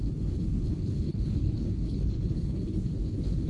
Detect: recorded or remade remade